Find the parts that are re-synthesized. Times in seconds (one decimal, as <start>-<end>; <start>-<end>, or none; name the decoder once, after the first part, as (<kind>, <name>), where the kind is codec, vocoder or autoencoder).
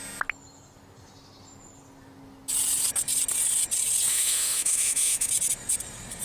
4.1-5.3 (autoencoder, DAC-VAE)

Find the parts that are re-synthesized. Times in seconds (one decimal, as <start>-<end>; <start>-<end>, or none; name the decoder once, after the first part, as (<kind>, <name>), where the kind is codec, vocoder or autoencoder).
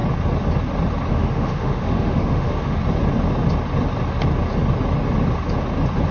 1.1-2.8 (autoencoder, DAC-VAE)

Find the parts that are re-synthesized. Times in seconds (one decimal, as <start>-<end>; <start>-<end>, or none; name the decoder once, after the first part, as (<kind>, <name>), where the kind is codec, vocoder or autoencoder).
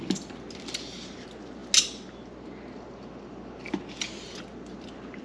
none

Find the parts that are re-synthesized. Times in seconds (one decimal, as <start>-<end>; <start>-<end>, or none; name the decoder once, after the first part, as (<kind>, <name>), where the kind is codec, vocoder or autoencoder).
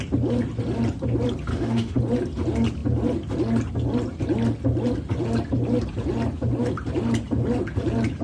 1.5-2.0 (autoencoder, DAC-VAE)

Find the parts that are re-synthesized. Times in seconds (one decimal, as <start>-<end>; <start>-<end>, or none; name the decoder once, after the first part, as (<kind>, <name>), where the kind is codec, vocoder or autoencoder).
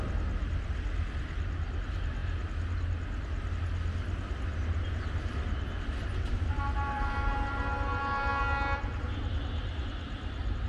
none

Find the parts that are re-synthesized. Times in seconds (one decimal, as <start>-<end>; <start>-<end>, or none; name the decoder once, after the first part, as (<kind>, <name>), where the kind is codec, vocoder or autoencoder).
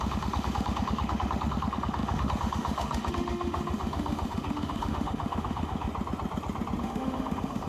0.0-5.9 (autoencoder, DAC-VAE); 6.8-7.7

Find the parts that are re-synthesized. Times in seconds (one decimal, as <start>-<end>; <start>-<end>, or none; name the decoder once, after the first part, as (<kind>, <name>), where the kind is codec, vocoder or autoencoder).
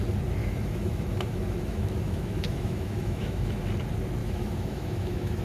0.4-3.6 (autoencoder, DAC-VAE); 4.2-5.4